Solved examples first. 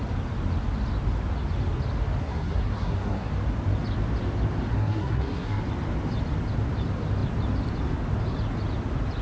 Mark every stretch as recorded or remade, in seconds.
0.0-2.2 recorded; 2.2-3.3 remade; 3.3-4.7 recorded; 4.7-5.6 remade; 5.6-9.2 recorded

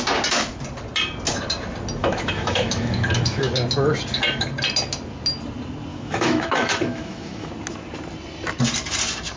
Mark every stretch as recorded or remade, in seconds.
0.0-2.0 recorded; 2.0-3.5 remade; 3.5-5.9 recorded; 5.9-7.5 remade; 7.5-9.4 recorded

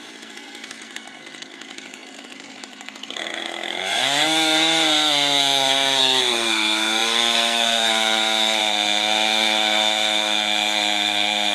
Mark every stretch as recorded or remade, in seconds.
0.0-11.5 remade

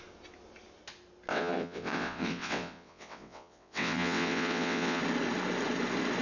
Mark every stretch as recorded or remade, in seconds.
0.0-1.3 recorded; 1.3-5.0 remade; 5.0-6.2 recorded

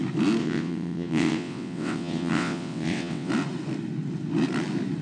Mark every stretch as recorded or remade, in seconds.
0.0-0.4 recorded; 0.4-3.3 remade; 3.3-5.0 recorded